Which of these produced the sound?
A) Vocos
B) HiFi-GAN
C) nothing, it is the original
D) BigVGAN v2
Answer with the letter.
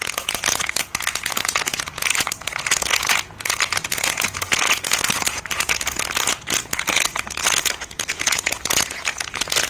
A